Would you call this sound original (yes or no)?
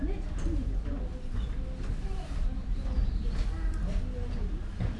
yes